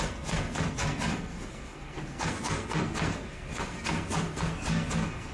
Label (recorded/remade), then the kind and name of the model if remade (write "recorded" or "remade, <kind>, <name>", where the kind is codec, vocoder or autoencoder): remade, codec, SNAC